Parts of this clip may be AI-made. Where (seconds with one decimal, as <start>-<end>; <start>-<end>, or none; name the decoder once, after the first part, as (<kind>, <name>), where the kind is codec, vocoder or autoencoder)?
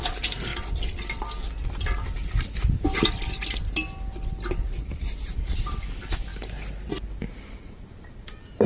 0.0-0.5 (vocoder, BigVGAN v2); 4.8-6.3; 7.2-8.7